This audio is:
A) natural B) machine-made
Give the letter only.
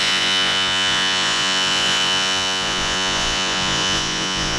B